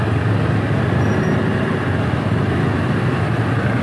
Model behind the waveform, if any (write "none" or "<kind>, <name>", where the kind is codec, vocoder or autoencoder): none